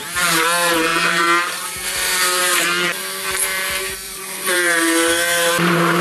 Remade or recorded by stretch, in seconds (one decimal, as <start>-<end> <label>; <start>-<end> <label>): 0.0-6.0 remade